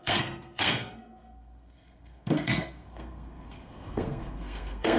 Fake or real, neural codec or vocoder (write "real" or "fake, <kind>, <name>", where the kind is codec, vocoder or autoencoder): fake, codec, SNAC